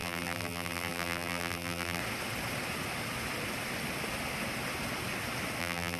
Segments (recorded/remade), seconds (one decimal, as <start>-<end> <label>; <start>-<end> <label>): 0.0-2.0 remade; 2.0-5.6 recorded; 5.6-6.0 remade